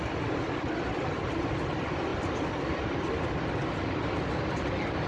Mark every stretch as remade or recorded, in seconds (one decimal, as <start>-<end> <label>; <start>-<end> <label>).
0.0-5.1 recorded